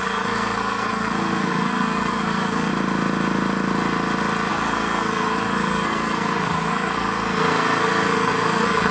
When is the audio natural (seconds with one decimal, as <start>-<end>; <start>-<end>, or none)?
2.7-4.5